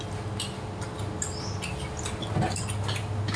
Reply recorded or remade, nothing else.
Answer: recorded